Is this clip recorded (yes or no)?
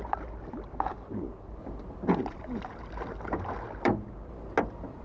yes